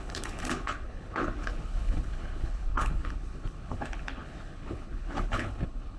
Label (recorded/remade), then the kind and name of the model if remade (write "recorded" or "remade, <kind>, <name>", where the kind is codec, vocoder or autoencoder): remade, codec, HILCodec